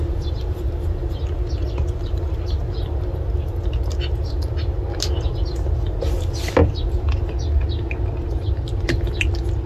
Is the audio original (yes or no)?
yes